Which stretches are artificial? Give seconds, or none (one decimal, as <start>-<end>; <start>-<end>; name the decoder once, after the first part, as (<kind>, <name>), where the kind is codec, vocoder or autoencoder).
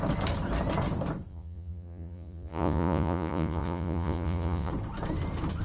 1.3-4.7 (vocoder, Vocos)